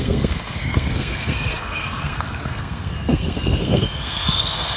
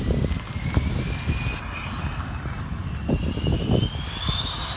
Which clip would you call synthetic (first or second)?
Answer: first